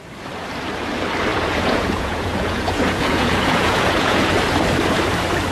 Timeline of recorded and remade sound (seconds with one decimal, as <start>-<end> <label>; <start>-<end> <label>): 0.0-1.3 recorded; 1.3-4.3 remade; 4.3-5.5 recorded

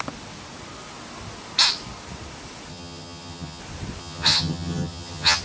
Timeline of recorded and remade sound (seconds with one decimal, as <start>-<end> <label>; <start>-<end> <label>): 0.0-2.7 recorded; 2.7-3.6 remade; 3.6-4.0 recorded; 4.0-5.4 remade

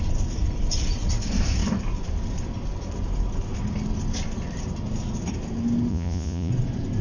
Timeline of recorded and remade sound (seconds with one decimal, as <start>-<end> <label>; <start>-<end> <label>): 0.0-5.9 recorded; 5.9-6.5 remade; 6.5-7.0 recorded

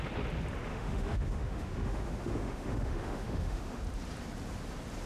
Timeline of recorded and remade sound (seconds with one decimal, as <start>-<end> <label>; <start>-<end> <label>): 0.0-0.7 recorded; 0.7-3.8 remade; 3.8-5.1 recorded

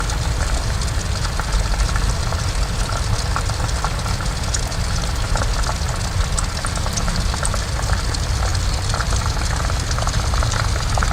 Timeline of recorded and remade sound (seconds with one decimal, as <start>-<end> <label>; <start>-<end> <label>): 0.0-11.1 recorded

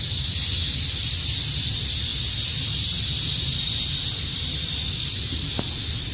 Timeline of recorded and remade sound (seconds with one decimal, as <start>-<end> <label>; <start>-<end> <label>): 0.0-6.1 recorded